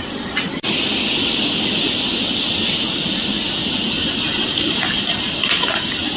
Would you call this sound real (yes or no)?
yes